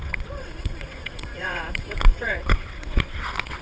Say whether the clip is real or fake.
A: fake